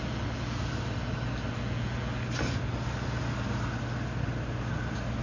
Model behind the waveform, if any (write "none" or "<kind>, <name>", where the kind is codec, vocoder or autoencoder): none